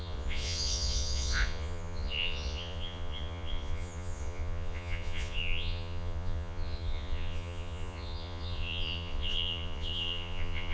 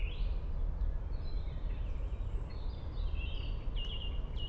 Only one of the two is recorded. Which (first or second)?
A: second